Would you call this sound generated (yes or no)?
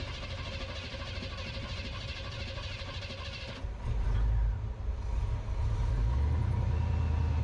no